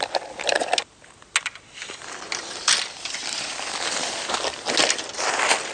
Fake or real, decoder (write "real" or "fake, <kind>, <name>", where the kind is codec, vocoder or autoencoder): real